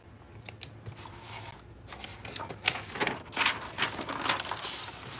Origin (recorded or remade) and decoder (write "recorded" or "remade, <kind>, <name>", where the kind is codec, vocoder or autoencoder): recorded